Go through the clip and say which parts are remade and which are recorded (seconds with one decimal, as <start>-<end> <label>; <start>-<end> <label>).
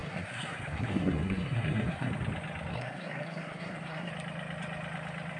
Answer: 0.0-2.1 remade; 2.1-2.7 recorded; 2.7-4.1 remade; 4.1-5.4 recorded